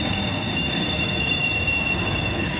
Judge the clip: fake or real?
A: fake